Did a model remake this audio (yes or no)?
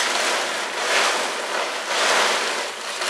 no